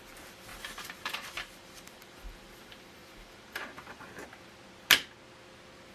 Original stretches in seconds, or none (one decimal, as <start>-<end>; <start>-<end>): 0.0-0.5; 4.0-5.9